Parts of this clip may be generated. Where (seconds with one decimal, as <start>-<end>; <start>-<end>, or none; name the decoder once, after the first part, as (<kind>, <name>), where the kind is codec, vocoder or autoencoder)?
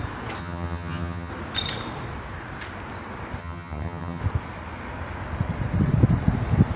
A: 0.4-1.3 (vocoder, HiFi-GAN); 3.4-4.2